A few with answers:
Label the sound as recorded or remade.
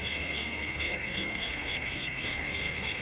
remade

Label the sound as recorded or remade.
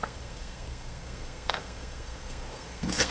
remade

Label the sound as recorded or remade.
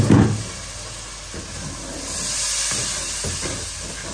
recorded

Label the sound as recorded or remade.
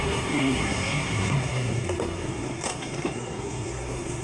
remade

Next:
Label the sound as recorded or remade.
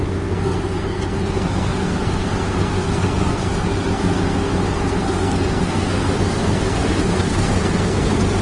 remade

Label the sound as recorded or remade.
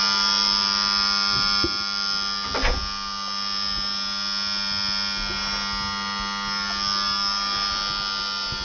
recorded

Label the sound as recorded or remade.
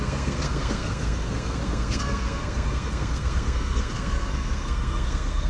remade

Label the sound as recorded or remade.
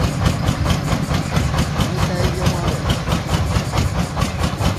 recorded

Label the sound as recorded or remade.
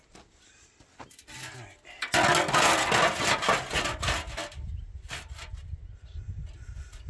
recorded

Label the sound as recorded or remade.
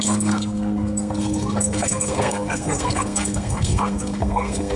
remade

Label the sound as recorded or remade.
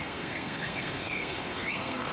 remade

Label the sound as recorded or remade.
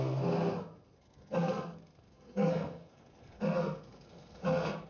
remade